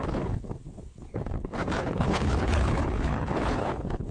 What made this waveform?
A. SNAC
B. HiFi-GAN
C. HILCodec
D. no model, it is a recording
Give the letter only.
C